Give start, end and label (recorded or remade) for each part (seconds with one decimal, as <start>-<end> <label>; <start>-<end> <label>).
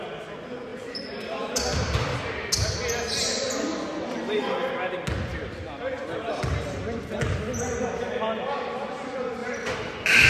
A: 0.0-0.7 recorded; 0.7-2.5 remade; 2.5-5.3 recorded; 5.3-8.0 remade; 8.0-9.4 recorded; 9.4-10.3 remade